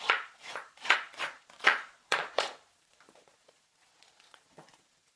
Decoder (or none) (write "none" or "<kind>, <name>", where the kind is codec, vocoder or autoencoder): vocoder, Vocos